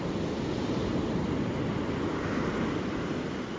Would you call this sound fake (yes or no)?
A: no